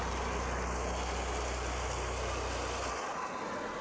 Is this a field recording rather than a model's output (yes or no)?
yes